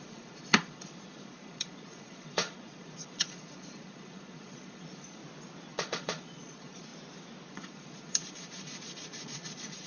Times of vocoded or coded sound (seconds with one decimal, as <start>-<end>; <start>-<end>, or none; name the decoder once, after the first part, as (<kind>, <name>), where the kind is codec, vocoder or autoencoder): 0.0-5.2 (vocoder, Vocos); 5.7-6.9; 7.5-9.9